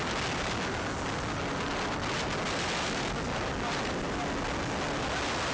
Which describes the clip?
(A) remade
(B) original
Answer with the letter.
B